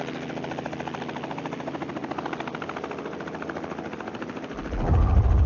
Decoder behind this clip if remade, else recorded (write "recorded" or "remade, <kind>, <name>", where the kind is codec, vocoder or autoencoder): recorded